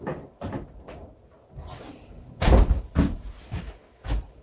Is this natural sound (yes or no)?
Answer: no